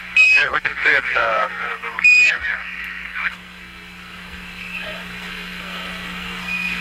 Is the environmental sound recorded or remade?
remade